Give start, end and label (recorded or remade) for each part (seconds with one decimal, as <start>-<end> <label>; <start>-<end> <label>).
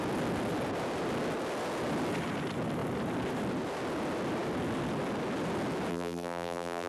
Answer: 0.0-5.9 recorded; 5.9-6.9 remade